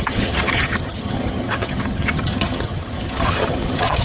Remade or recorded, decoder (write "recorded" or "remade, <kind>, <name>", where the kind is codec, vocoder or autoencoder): remade, vocoder, HiFi-GAN